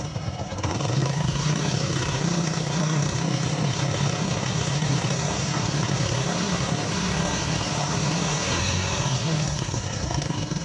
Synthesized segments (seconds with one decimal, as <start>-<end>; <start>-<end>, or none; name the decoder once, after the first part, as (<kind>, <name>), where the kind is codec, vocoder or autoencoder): 0.0-10.6 (codec, SNAC)